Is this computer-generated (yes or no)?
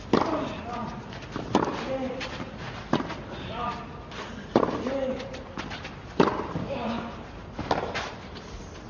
no